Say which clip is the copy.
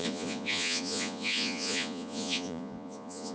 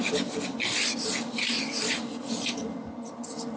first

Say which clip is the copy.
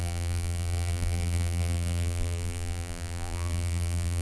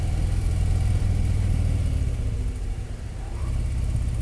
first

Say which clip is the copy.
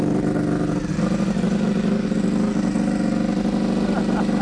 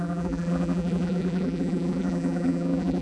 second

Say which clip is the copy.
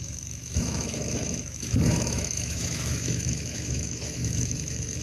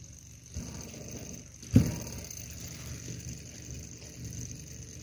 first